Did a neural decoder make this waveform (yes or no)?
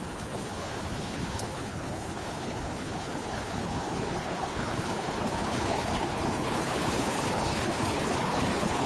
yes